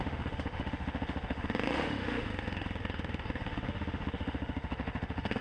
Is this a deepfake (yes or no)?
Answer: yes